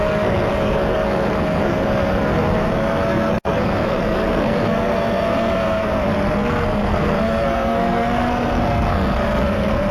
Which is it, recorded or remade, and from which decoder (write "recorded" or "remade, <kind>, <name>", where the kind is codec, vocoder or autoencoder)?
remade, codec, SNAC